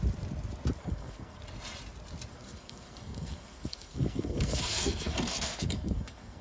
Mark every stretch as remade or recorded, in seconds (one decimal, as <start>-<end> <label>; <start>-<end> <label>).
0.0-0.8 recorded; 0.8-1.4 remade; 1.4-2.3 recorded; 2.3-6.4 remade